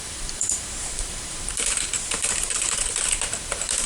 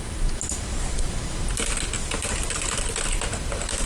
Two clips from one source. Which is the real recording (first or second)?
second